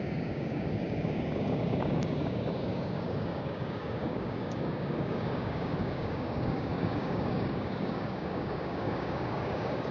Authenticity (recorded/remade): remade